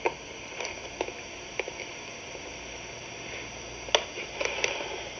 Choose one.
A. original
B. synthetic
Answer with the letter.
A